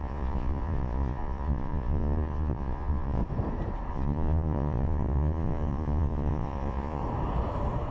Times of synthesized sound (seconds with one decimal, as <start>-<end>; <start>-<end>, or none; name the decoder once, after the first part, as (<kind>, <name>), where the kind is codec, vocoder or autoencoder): 0.0-3.2 (vocoder, Vocos); 3.9-7.0